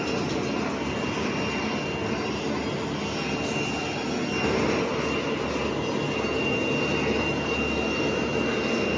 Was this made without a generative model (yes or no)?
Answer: yes